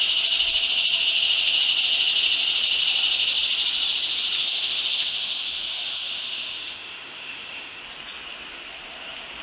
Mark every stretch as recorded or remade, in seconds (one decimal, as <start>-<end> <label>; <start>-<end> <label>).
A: 0.0-4.4 recorded; 4.4-7.8 remade; 7.8-9.4 recorded